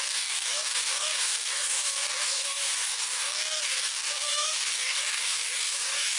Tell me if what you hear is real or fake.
fake